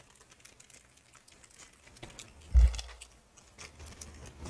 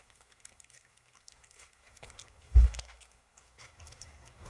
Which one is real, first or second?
first